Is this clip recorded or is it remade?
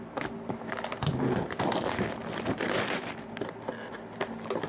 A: recorded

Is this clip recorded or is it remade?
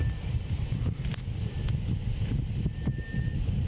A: remade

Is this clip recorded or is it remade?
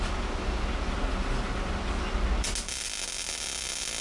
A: recorded